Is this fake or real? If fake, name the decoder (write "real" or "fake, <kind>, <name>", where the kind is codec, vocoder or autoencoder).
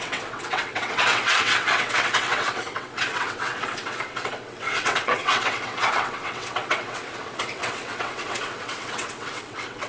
fake, vocoder, WaveNeXt